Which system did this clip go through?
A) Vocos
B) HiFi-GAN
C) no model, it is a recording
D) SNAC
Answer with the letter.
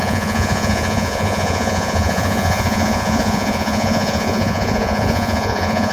A